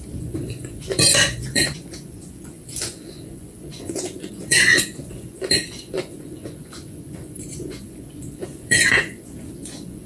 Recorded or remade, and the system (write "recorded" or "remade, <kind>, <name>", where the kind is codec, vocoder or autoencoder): remade, vocoder, Vocos